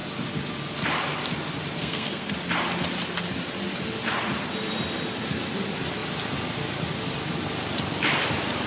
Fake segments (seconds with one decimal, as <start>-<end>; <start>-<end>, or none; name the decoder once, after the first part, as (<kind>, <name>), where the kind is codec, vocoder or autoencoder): 1.8-2.3 (codec, SNAC)